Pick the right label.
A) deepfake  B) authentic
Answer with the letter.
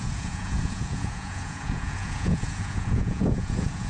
A